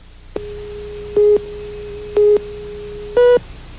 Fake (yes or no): no